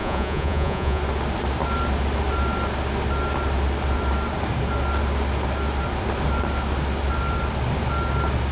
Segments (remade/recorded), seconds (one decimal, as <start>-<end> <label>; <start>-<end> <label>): 0.0-1.0 remade; 1.0-8.5 recorded